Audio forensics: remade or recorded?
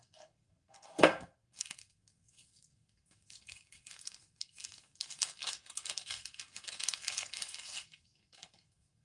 remade